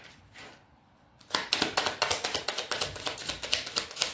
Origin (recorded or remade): recorded